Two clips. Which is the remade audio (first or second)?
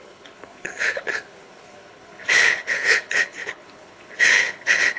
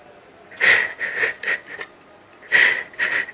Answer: first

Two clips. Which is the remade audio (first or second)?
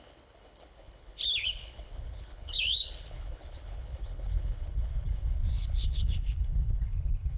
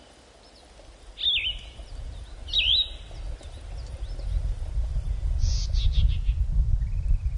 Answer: first